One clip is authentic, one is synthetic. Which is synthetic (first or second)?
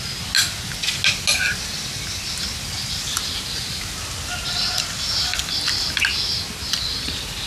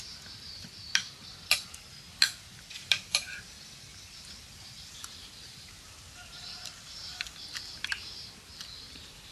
second